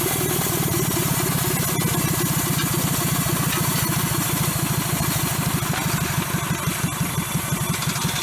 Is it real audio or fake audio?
real